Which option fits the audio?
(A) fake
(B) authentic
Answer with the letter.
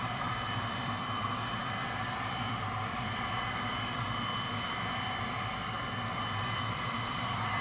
A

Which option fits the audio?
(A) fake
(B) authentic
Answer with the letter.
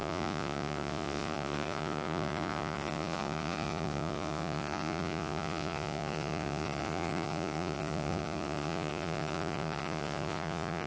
A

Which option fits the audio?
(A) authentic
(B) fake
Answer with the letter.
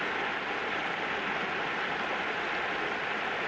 A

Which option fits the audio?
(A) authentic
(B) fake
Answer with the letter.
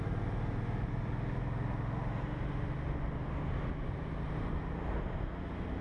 A